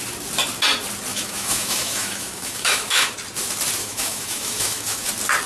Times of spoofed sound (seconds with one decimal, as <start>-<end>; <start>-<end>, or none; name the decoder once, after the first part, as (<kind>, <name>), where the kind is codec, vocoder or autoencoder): 1.1-3.1 (autoencoder, DAC-VAE); 3.8-5.1